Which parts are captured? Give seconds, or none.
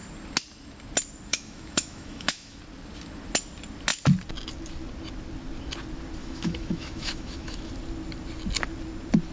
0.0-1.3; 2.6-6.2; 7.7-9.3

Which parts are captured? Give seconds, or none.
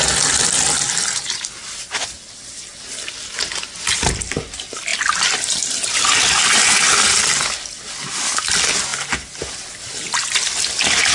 0.0-11.1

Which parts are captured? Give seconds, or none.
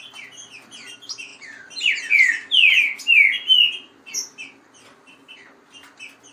0.0-1.3; 1.8-6.3